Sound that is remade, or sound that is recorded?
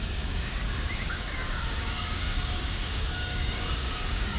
remade